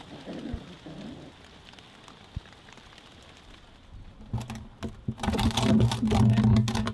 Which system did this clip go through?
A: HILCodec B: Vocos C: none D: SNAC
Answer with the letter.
C